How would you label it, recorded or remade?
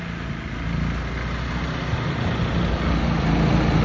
recorded